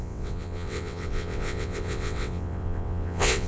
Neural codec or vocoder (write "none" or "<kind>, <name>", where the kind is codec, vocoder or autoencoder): vocoder, WaveNeXt